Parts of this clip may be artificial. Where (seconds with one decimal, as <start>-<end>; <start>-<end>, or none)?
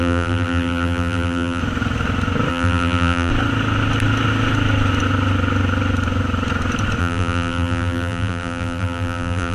0.0-1.6; 2.5-3.3; 7.0-9.5